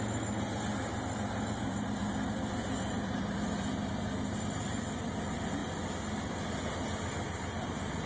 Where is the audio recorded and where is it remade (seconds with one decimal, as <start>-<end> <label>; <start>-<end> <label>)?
0.0-8.1 recorded